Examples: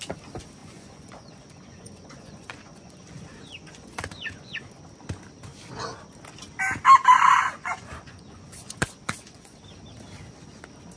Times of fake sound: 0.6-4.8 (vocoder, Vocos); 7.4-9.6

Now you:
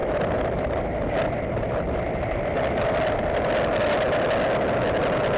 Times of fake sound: none

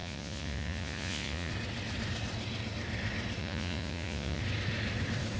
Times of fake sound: 0.0-1.5 (vocoder, Vocos); 3.4-4.4

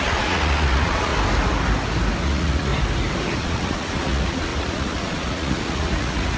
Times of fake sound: 0.0-1.1 (vocoder, Vocos); 2.2-2.7; 3.4-6.4

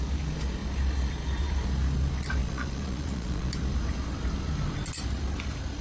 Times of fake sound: 2.4-3.5 (vocoder, Vocos)